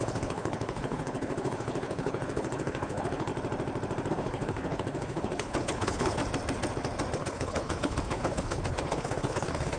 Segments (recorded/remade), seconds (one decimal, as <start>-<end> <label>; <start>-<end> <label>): 0.0-3.3 remade; 3.3-4.1 recorded; 4.1-6.2 remade; 6.2-7.2 recorded; 7.2-9.8 remade